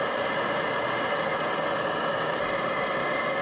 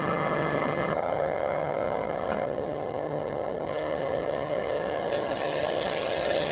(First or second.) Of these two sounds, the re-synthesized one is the second